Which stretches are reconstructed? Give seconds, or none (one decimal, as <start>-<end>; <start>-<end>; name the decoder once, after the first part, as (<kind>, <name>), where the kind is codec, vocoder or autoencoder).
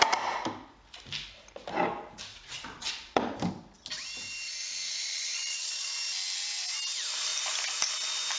2.3-3.2 (vocoder, Vocos); 5.0-5.9